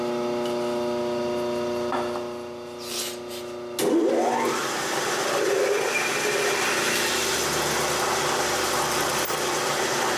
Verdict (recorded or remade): recorded